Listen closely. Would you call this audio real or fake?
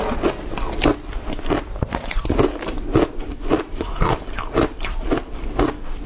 real